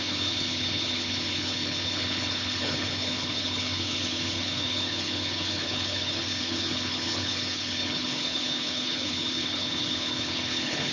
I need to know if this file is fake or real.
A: fake